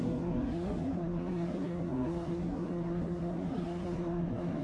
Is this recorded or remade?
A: remade